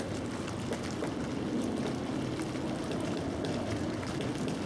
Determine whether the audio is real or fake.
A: real